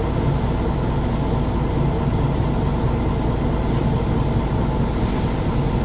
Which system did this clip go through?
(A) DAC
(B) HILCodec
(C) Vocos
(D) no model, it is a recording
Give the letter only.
D